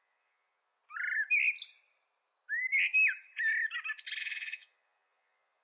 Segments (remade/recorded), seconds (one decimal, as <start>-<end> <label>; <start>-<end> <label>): 0.0-0.8 remade; 0.8-4.2 recorded; 4.2-5.6 remade